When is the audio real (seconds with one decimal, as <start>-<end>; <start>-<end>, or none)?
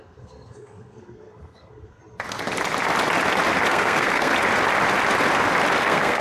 2.0-3.7; 4.3-5.8